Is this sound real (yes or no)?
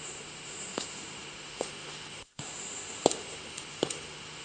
no